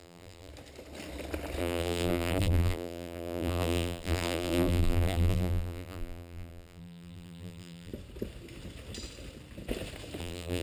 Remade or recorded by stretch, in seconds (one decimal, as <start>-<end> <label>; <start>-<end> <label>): 0.0-0.5 remade; 0.5-1.6 recorded; 1.6-7.9 remade; 7.9-10.2 recorded; 10.2-10.6 remade